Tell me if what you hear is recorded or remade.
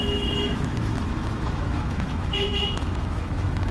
remade